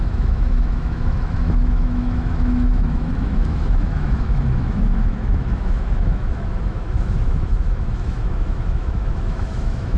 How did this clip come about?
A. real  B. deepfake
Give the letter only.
B